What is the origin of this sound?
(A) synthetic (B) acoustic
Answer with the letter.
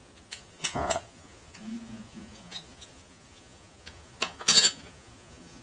A